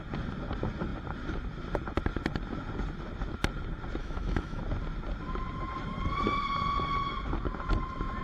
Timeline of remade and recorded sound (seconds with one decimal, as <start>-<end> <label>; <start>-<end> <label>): 0.0-4.0 recorded; 4.0-4.6 remade; 4.6-8.2 recorded